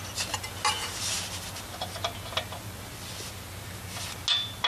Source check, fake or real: real